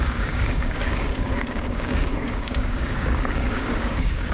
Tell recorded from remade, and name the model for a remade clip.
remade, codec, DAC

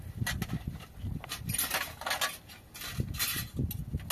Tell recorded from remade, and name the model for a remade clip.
recorded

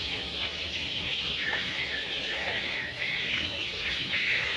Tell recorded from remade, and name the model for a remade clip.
remade, codec, SNAC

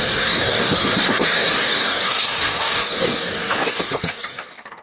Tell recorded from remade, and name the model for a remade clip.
remade, codec, DAC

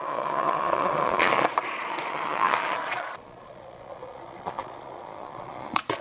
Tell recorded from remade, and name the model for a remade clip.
remade, vocoder, Vocos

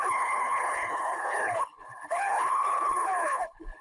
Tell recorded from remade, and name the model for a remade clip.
remade, codec, HILCodec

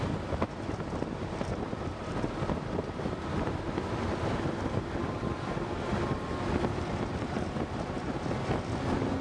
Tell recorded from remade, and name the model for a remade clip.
remade, vocoder, BigVGAN v2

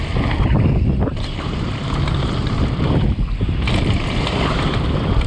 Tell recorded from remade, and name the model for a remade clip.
remade, vocoder, BigVGAN v2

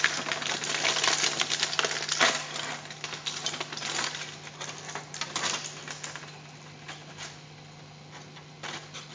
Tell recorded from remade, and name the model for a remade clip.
recorded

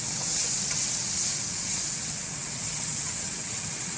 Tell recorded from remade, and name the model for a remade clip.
remade, vocoder, WaveNeXt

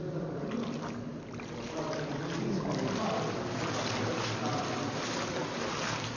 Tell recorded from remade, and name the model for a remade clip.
recorded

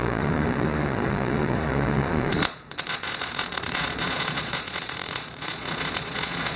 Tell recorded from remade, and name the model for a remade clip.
remade, vocoder, Vocos